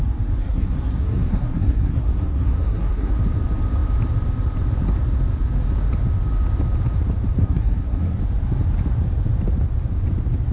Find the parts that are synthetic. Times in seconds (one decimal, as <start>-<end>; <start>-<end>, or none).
0.4-3.1; 7.4-8.2